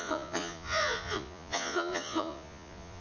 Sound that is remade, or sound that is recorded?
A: remade